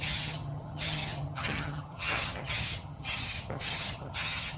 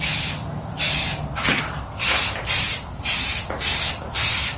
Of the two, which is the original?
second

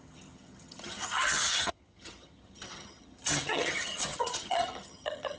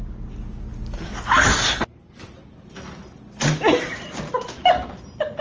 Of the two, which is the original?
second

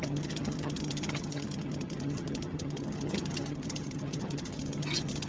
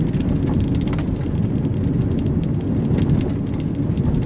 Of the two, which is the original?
second